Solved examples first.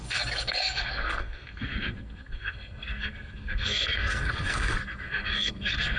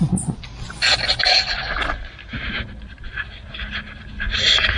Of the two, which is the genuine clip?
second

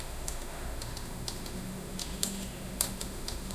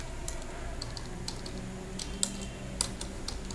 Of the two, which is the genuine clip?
second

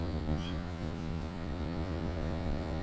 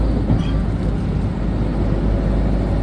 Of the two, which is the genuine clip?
second